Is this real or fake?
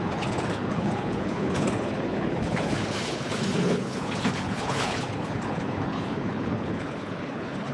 fake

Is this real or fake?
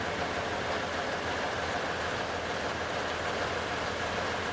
real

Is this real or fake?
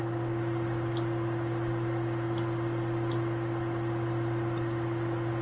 real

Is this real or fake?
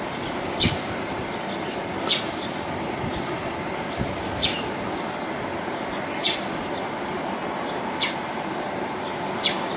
real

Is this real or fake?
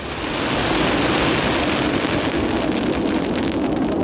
real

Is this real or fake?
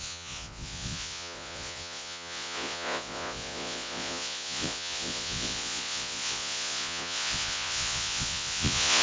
fake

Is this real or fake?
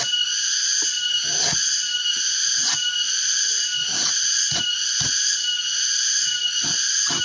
real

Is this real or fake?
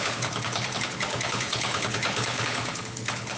fake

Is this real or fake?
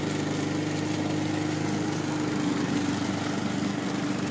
real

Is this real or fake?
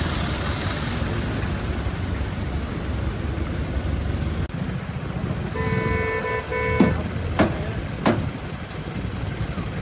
real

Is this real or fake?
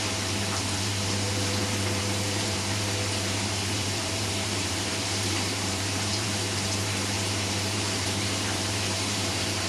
fake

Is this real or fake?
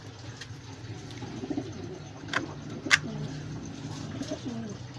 real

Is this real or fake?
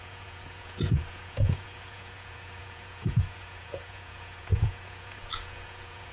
fake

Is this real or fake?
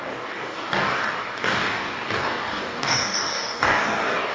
fake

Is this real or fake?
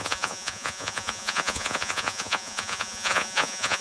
fake